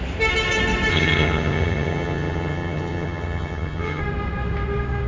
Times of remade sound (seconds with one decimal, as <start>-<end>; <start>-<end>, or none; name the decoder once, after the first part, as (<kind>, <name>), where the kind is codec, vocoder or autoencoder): 0.9-4.0 (vocoder, HiFi-GAN)